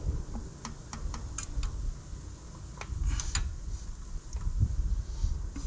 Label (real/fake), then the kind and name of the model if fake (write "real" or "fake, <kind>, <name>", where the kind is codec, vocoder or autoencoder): real